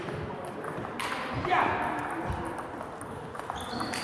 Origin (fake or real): real